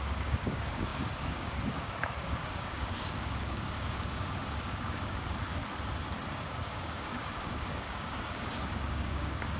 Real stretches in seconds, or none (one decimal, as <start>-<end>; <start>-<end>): 5.6-6.3